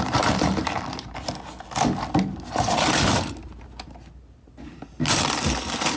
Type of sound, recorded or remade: recorded